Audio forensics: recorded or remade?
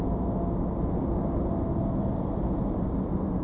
recorded